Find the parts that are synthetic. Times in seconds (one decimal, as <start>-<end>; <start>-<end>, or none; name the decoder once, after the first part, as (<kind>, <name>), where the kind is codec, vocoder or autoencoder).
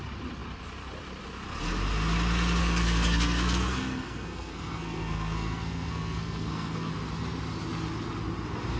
2.6-6.9 (codec, SNAC)